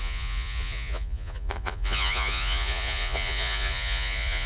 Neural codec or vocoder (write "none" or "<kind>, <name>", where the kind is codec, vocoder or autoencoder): vocoder, Vocos